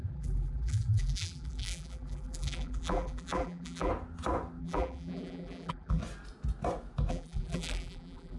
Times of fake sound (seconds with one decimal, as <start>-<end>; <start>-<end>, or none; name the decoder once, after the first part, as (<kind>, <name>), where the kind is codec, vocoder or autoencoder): 0.0-3.9 (vocoder, BigVGAN v2); 4.6-6.0; 7.1-8.4